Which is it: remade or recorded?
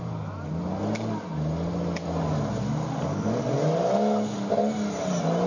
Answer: recorded